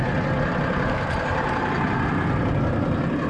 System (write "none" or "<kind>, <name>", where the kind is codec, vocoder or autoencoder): none